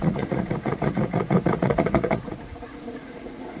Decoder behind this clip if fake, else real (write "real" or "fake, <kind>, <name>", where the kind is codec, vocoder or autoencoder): fake, vocoder, Vocos